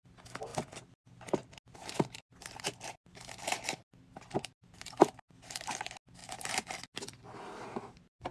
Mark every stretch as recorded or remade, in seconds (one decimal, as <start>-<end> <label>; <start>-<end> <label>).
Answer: 0.0-8.3 recorded

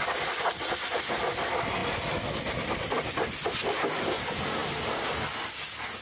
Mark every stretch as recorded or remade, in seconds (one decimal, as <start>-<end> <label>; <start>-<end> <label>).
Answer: 0.0-6.0 recorded